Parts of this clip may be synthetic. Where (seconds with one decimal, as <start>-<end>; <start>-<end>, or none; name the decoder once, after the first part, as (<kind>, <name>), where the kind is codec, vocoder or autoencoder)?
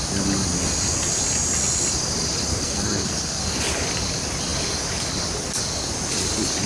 2.5-3.6 (codec, SNAC)